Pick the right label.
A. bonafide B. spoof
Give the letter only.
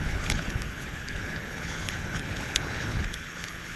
B